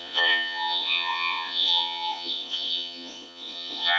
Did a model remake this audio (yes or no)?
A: yes